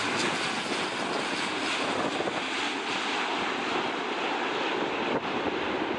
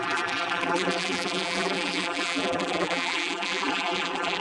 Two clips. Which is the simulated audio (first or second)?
second